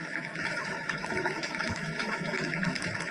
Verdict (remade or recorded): remade